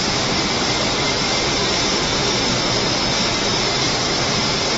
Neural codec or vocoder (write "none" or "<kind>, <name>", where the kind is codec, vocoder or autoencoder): none